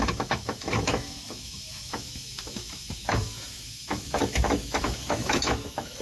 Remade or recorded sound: remade